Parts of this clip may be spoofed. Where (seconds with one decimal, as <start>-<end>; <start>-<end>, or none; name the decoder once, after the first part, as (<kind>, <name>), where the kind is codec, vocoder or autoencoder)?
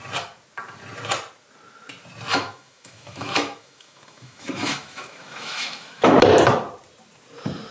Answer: 2.3-6.1 (autoencoder, DAC-VAE)